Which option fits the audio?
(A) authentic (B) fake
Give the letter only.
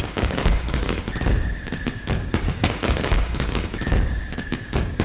B